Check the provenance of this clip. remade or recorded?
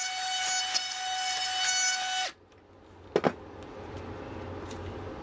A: recorded